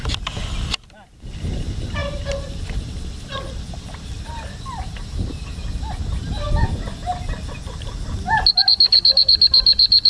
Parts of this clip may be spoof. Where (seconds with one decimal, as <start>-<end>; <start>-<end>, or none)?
none